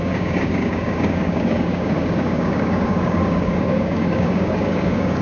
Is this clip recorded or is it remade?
remade